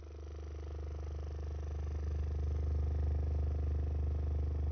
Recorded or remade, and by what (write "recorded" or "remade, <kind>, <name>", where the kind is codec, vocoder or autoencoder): recorded